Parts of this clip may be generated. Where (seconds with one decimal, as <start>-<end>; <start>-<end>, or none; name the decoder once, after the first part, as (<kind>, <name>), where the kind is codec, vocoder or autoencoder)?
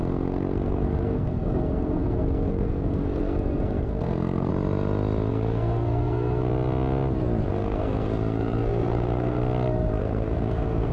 0.0-4.5 (codec, SNAC); 5.3-6.5; 7.5-9.4; 10.0-10.9